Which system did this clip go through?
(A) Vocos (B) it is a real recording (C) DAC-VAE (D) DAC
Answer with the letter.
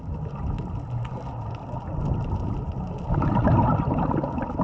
B